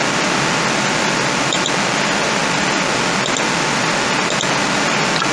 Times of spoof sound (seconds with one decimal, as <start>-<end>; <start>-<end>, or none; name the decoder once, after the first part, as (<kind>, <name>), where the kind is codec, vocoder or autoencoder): none